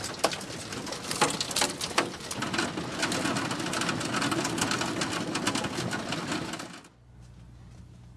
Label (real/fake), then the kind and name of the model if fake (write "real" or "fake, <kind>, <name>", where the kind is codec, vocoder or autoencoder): real